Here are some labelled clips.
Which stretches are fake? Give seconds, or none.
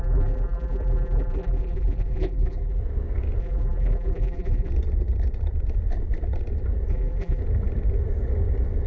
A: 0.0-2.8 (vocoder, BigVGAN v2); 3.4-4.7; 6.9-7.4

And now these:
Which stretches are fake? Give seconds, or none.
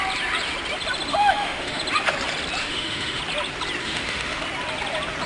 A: 1.1-1.8 (autoencoder, DAC-VAE); 2.6-3.2; 3.8-4.4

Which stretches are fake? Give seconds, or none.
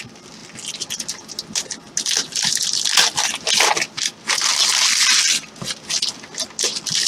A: none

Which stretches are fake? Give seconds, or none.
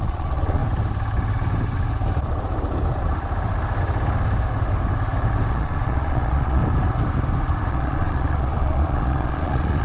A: 0.0-0.6 (vocoder, Vocos); 5.5-6.6; 7.7-9.8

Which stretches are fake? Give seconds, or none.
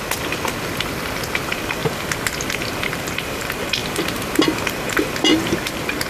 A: 0.0-1.8 (vocoder, BigVGAN v2); 2.7-5.3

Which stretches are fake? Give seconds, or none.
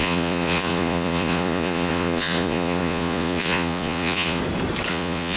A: 0.0-4.4 (vocoder, Vocos); 4.9-5.4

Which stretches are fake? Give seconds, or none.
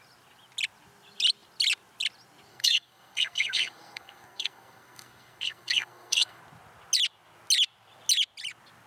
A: 2.5-6.4 (codec, SNAC)